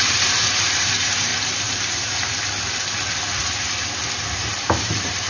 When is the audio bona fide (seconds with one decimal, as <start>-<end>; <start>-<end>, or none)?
1.3-4.5